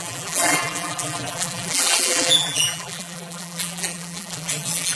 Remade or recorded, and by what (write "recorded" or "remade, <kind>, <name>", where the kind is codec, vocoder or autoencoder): remade, vocoder, BigVGAN v2